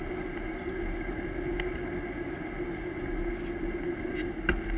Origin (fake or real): real